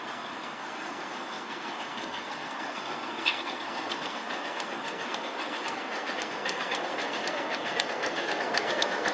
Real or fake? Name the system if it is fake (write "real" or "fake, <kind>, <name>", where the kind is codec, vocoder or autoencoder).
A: fake, codec, SNAC